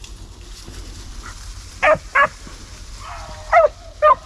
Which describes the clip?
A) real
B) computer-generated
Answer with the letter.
A